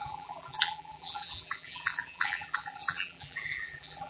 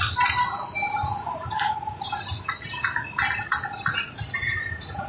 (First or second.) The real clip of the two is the second